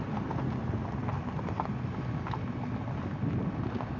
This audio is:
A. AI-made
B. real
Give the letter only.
B